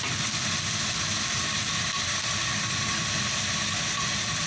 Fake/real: real